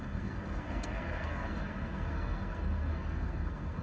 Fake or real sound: fake